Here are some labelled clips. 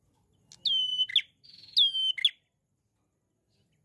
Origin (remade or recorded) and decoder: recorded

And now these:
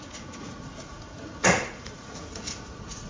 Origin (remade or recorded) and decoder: remade, vocoder, Vocos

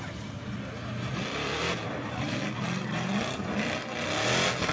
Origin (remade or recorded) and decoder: recorded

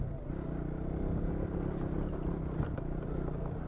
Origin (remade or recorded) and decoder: recorded